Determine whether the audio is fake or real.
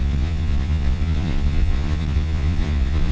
fake